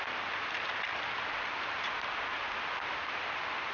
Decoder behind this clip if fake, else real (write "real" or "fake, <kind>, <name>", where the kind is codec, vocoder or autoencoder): fake, vocoder, BigVGAN v2